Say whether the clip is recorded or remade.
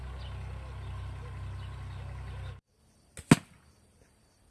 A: recorded